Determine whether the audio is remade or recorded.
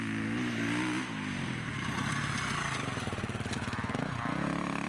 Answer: recorded